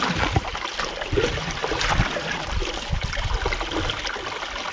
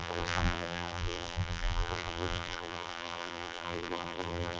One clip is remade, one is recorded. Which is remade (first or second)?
second